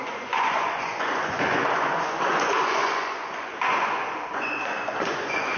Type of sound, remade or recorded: remade